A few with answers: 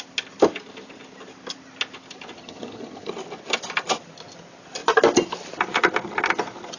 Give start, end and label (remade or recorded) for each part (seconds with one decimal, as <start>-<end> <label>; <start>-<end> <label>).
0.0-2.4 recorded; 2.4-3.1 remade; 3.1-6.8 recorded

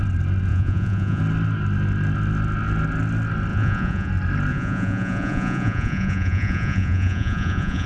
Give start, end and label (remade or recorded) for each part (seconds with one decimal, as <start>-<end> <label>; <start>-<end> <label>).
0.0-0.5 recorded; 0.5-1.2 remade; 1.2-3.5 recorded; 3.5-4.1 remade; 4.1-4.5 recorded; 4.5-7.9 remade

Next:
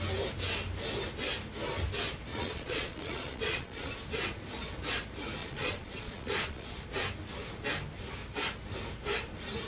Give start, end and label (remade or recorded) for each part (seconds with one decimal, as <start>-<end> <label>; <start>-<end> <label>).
0.0-2.3 recorded; 2.3-3.9 remade; 3.9-5.4 recorded; 5.4-6.7 remade; 6.7-9.7 recorded